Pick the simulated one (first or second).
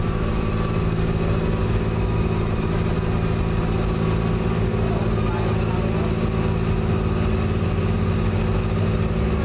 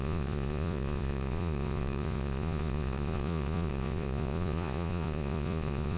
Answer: second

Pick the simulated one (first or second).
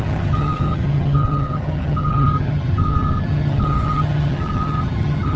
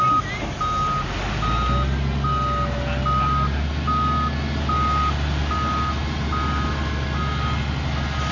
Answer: first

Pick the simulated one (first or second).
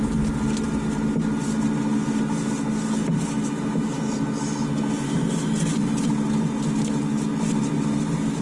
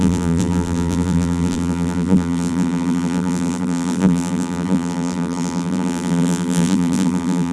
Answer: second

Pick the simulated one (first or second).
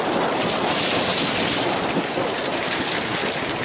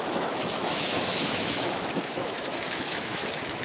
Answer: second